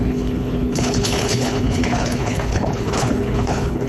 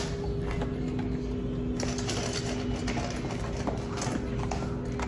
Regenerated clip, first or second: first